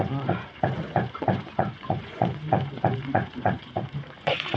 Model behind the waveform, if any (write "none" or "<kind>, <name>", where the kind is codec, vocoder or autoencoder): vocoder, Vocos